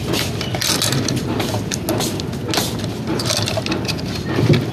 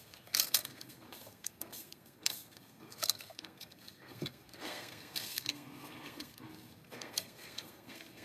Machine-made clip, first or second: second